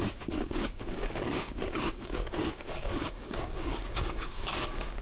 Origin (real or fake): fake